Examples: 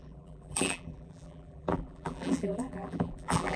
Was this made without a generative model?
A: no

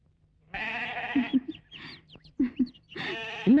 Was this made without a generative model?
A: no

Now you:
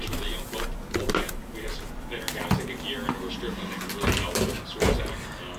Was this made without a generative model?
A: yes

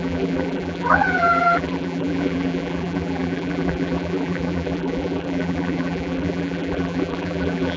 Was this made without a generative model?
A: no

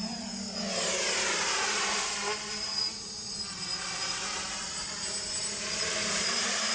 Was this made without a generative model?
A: no